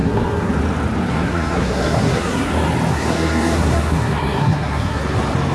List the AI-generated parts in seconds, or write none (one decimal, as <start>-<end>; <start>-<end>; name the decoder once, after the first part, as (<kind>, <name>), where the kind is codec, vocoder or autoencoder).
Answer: 0.0-0.5 (codec, SNAC); 1.1-2.5; 2.9-5.0